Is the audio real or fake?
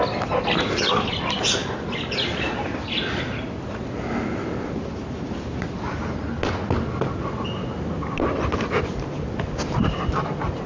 real